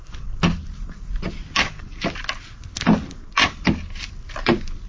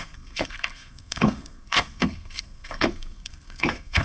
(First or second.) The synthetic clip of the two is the second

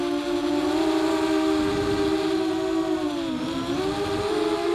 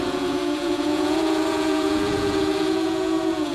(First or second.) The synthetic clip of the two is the second